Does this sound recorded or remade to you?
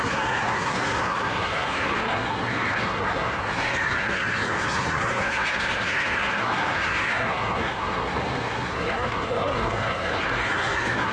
remade